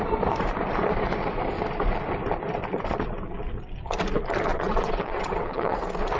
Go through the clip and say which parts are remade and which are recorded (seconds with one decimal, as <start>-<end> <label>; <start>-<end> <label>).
0.0-4.5 recorded; 4.5-5.8 remade; 5.8-6.2 recorded